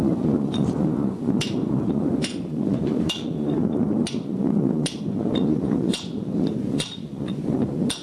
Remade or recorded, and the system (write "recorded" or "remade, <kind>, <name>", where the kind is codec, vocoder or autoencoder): remade, vocoder, Vocos